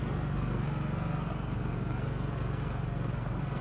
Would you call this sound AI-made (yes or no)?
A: yes